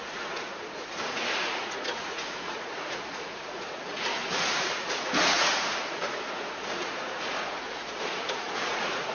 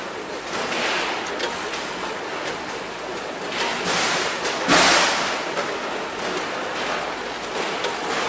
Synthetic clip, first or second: first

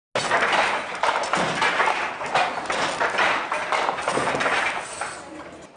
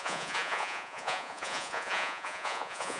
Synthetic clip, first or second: second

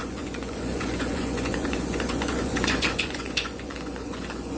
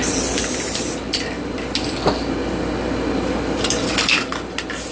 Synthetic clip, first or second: first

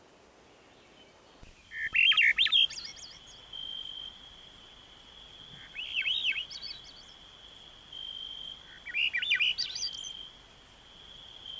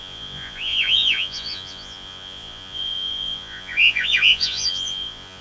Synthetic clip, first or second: second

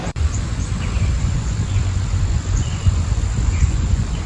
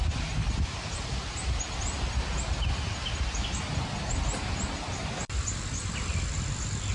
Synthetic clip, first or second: first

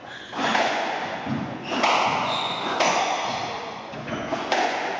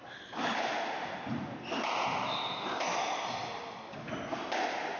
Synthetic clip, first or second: first